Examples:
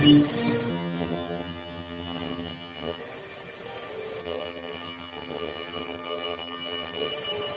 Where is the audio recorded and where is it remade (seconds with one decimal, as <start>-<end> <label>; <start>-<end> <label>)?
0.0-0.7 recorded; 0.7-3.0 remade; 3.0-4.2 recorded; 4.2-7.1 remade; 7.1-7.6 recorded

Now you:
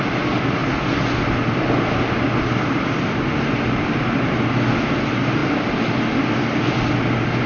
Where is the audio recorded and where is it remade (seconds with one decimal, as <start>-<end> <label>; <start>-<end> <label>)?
0.0-7.5 recorded

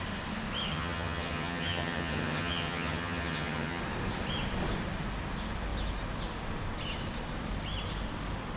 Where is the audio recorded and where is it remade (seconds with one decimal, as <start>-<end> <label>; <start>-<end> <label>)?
0.0-0.7 recorded; 0.7-3.8 remade; 3.8-8.6 recorded